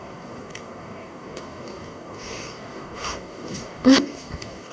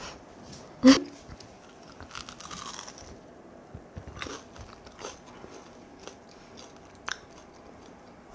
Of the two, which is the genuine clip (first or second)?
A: second